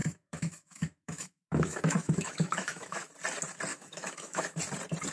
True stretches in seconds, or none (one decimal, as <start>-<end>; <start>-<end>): 3.1-3.7; 4.6-5.1